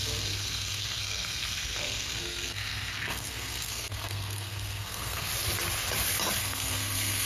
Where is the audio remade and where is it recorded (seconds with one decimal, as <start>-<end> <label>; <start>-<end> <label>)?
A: 0.0-5.3 remade; 5.3-6.4 recorded; 6.4-7.3 remade